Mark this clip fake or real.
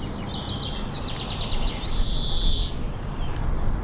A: real